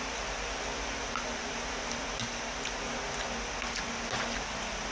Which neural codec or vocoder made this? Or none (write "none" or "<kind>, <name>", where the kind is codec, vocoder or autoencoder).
none